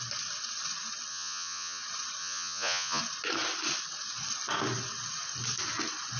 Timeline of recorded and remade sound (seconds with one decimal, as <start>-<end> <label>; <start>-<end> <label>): 0.0-1.1 recorded; 1.1-1.8 remade; 1.8-2.2 recorded; 2.2-3.0 remade; 3.0-6.2 recorded